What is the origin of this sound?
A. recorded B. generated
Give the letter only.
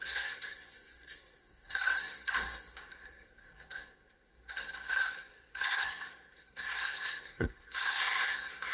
B